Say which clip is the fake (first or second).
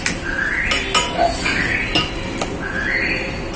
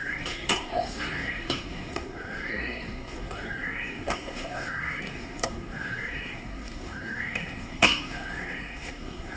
second